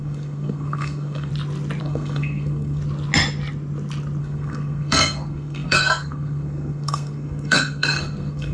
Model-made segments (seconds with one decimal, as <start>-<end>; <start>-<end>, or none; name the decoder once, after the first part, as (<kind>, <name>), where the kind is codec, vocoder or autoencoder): 0.0-1.3 (codec, SNAC); 1.8-2.8; 4.2-8.5